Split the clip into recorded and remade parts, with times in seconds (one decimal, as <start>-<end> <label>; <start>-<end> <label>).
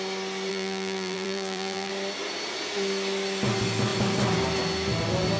0.0-0.5 recorded; 0.5-1.9 remade; 1.9-5.4 recorded